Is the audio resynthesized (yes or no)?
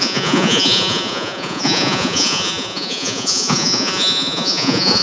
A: yes